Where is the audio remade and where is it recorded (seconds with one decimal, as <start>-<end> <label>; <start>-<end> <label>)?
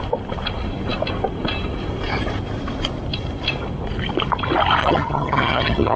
0.0-4.8 recorded; 4.8-6.0 remade